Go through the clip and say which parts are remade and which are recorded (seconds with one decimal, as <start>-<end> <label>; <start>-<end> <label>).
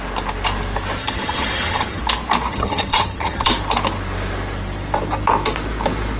0.0-1.0 recorded; 1.0-2.0 remade; 2.0-2.5 recorded; 2.5-3.5 remade; 3.5-6.2 recorded